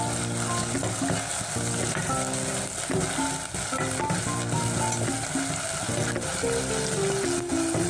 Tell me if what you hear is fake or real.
real